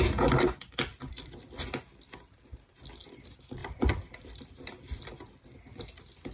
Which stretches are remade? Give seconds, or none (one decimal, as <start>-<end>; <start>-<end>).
0.9-1.8; 3.6-5.0